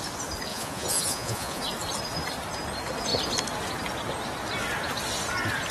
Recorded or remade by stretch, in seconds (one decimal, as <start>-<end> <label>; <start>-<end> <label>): 0.0-0.5 recorded; 0.5-1.6 remade; 1.6-5.7 recorded